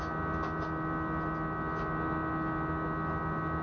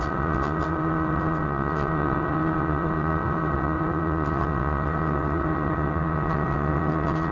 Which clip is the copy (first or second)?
second